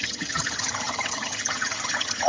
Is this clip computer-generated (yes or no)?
yes